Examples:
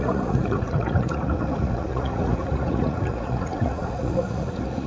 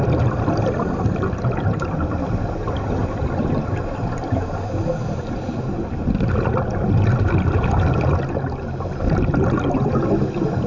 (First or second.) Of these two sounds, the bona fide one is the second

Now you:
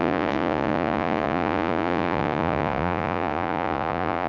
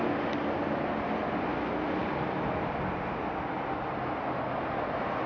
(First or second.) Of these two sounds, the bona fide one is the second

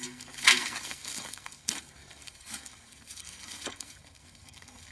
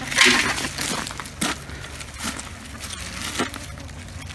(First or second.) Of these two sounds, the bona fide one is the second